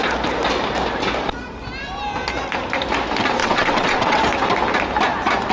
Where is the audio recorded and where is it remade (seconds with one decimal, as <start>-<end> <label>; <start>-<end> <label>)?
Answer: 0.0-3.4 recorded; 3.4-4.2 remade; 4.2-5.5 recorded